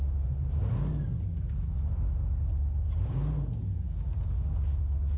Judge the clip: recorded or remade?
recorded